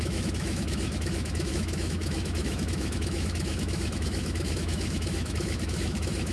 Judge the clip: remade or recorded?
remade